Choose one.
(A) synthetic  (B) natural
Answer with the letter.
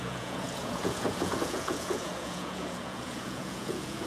A